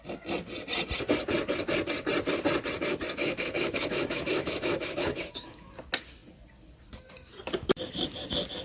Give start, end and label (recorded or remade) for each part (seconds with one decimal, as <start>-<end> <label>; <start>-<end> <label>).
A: 0.0-3.2 recorded; 3.2-5.7 remade; 5.7-8.6 recorded